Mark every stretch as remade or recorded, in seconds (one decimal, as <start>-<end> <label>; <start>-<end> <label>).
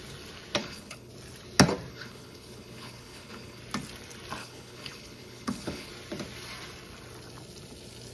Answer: 0.0-0.6 recorded; 0.6-1.1 remade; 1.1-1.9 recorded; 1.9-3.6 remade; 3.6-4.4 recorded; 4.4-5.9 remade; 5.9-8.1 recorded